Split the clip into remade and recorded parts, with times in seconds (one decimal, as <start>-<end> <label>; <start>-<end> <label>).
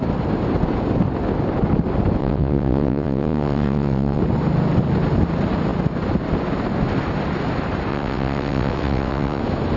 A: 0.0-2.2 recorded; 2.2-4.2 remade; 4.2-7.9 recorded; 7.9-9.4 remade; 9.4-9.8 recorded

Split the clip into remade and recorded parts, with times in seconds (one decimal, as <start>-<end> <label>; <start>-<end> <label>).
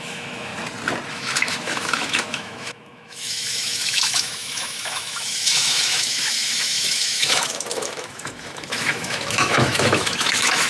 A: 0.0-0.5 remade; 0.5-1.1 recorded; 1.1-10.7 remade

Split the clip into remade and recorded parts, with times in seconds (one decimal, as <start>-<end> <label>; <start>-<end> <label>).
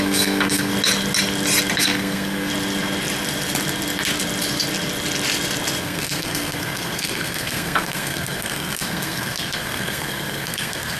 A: 0.0-0.7 remade; 0.7-1.8 recorded; 1.8-2.5 remade; 2.5-5.8 recorded; 5.8-11.0 remade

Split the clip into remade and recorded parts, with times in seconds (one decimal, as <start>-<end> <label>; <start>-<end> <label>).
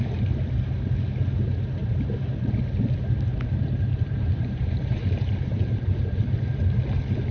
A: 0.0-1.8 recorded; 1.8-2.8 remade; 2.8-3.3 recorded; 3.3-6.5 remade; 6.5-7.3 recorded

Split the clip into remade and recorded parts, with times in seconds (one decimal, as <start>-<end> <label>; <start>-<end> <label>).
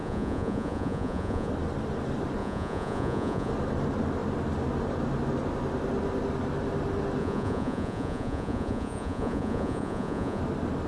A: 0.0-1.5 remade; 1.5-2.4 recorded; 2.4-3.5 remade; 3.5-7.2 recorded; 7.2-10.4 remade; 10.4-10.9 recorded